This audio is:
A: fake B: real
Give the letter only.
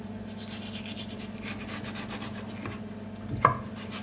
B